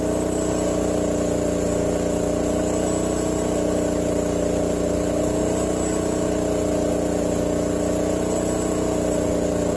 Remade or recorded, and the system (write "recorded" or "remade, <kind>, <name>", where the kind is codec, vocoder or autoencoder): recorded